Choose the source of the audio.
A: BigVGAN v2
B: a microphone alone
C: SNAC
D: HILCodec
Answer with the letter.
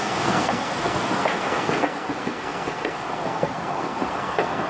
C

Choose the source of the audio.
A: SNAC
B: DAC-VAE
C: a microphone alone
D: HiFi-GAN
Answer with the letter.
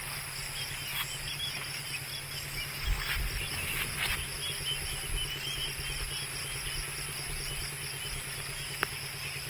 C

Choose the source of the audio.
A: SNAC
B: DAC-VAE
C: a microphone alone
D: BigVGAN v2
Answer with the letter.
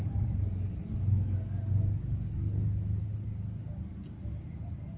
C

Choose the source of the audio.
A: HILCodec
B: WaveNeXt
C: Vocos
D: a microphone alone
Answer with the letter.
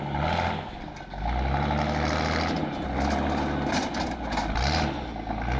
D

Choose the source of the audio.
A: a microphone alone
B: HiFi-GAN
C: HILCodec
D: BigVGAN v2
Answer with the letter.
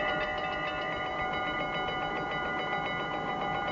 A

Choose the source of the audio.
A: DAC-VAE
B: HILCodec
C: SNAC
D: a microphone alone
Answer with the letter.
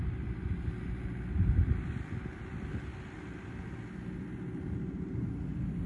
D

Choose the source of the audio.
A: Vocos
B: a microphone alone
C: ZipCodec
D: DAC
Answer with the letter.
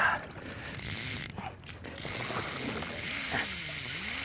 B